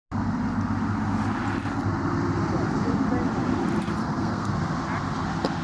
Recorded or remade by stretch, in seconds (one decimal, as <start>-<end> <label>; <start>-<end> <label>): 0.0-4.0 recorded; 4.0-4.5 remade; 4.5-5.6 recorded